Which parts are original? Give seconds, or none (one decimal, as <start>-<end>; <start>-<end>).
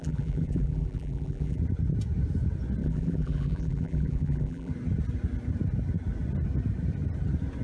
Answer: 1.6-2.8; 4.7-7.6